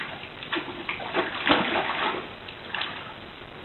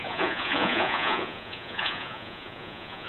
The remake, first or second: second